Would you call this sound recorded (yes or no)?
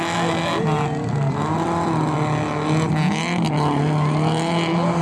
yes